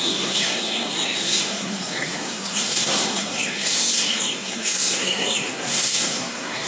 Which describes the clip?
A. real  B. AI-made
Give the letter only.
B